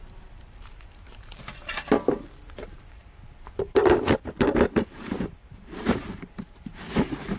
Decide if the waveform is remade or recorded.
remade